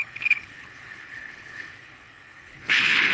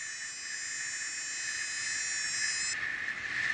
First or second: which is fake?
first